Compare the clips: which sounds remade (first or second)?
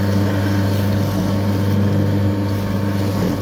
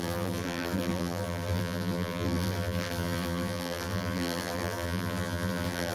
second